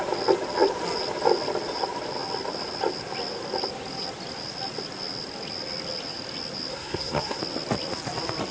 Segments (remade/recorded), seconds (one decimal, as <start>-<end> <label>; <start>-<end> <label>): 0.0-6.7 recorded; 6.7-7.4 remade; 7.4-8.5 recorded